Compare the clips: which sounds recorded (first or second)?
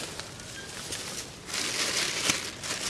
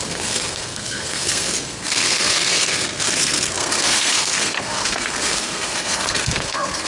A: first